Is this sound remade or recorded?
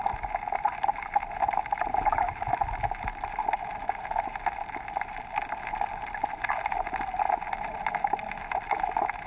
recorded